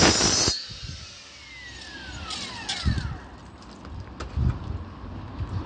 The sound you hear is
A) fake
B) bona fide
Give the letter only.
B